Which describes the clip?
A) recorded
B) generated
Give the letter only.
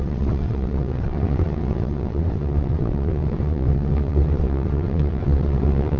B